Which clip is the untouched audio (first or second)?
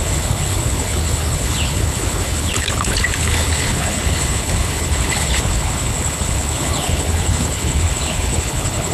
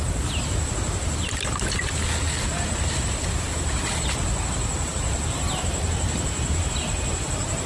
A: second